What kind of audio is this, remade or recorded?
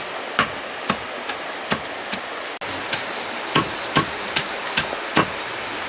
recorded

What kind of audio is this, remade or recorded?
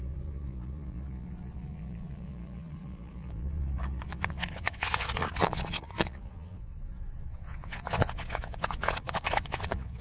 remade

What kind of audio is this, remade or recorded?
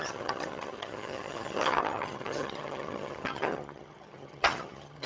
remade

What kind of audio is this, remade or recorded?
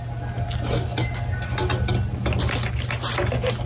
recorded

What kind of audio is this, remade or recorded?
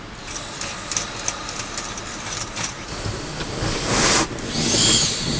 recorded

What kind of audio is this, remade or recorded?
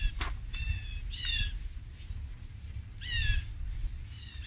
recorded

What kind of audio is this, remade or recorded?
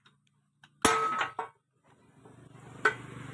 recorded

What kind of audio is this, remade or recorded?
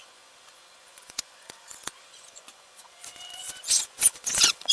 remade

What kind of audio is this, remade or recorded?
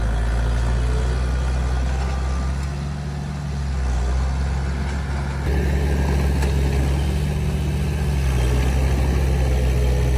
recorded